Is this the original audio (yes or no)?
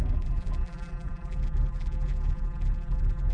no